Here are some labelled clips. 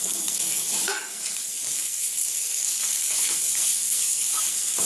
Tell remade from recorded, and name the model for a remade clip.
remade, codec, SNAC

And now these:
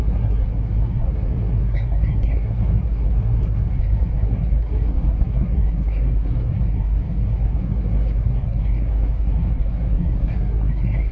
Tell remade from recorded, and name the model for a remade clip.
remade, codec, SNAC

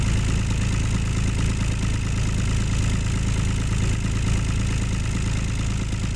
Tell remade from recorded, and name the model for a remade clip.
recorded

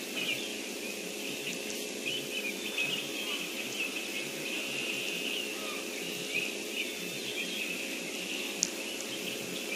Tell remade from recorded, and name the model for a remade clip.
recorded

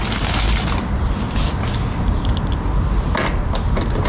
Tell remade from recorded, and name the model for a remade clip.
recorded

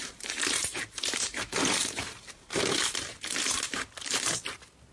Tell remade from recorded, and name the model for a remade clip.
remade, vocoder, BigVGAN v2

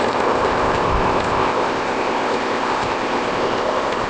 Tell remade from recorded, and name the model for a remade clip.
remade, codec, ZipCodec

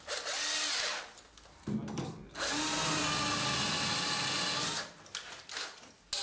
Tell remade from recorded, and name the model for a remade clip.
recorded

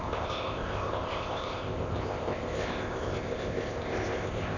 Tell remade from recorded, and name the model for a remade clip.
remade, codec, ZipCodec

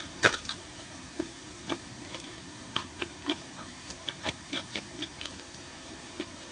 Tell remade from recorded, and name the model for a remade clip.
remade, codec, SNAC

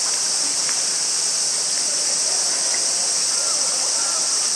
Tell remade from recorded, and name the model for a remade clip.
remade, vocoder, BigVGAN v2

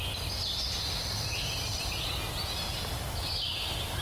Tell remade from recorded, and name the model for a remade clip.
recorded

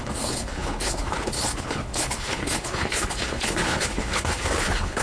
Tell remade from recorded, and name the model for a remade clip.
remade, codec, HILCodec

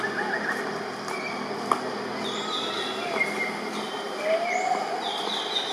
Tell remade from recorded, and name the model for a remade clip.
recorded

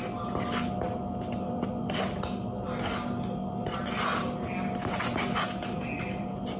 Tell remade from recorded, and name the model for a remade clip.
recorded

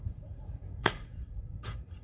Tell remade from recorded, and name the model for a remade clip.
remade, vocoder, Vocos